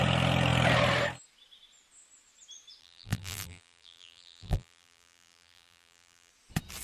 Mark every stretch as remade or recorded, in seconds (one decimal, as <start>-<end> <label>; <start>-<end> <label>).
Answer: 0.0-2.8 recorded; 2.8-6.3 remade; 6.3-6.8 recorded